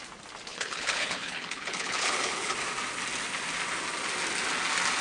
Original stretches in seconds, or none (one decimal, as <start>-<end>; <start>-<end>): 0.0-0.5; 2.5-5.0

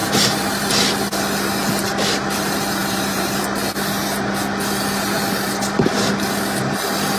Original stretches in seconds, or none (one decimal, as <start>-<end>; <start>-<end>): 0.7-2.8; 3.4-7.2

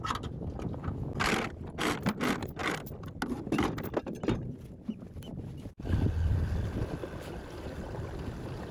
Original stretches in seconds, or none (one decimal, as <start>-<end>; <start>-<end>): 0.0-8.7

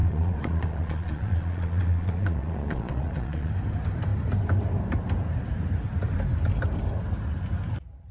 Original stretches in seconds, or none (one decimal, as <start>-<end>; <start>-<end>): 3.5-8.1

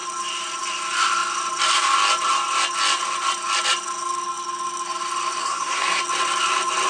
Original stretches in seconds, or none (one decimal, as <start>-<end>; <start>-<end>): 0.0-5.4; 6.0-6.9

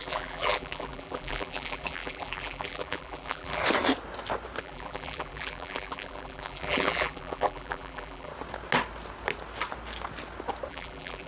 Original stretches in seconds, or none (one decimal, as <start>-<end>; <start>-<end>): 3.6-4.6; 8.3-10.7

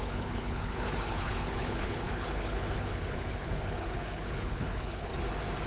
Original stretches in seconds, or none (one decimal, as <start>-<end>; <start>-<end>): 5.1-5.7